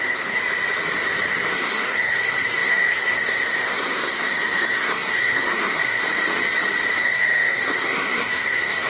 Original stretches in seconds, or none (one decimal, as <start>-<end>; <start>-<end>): 0.4-1.5; 6.0-7.0